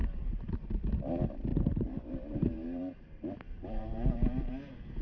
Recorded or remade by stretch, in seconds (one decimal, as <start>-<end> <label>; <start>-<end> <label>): 0.0-0.9 remade; 0.9-1.5 recorded; 1.5-4.5 remade; 4.5-5.0 recorded